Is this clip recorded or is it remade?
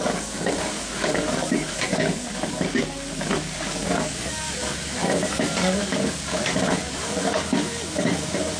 remade